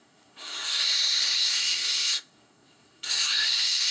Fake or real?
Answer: fake